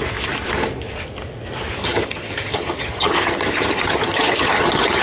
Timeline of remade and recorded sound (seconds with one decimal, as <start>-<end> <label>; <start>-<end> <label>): 0.0-1.8 recorded; 1.8-5.0 remade